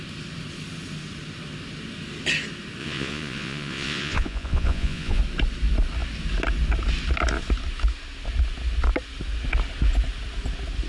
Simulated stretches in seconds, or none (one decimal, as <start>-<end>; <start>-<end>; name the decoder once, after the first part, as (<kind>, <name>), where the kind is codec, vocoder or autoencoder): 2.8-5.2 (vocoder, Vocos)